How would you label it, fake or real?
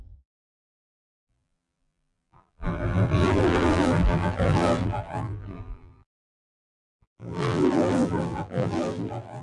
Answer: fake